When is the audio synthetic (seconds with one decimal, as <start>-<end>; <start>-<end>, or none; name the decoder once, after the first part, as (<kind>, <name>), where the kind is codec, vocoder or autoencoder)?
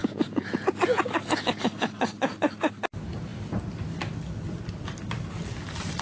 0.0-1.0 (vocoder, Vocos)